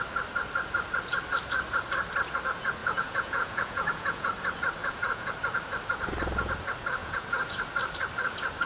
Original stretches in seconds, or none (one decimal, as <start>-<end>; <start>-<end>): 0.0-2.8; 4.3-4.8; 5.3-7.0; 7.6-8.7